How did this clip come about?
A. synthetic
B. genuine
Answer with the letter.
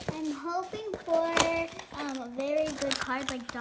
B